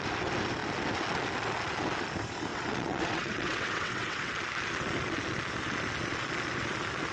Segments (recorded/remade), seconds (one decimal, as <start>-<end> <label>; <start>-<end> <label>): 0.0-2.5 recorded; 2.5-4.3 remade; 4.3-7.1 recorded